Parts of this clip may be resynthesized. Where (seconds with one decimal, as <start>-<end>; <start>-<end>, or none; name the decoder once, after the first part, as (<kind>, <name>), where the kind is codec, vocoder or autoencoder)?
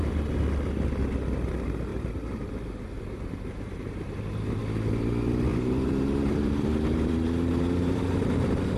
1.9-4.6 (vocoder, BigVGAN v2); 5.5-8.0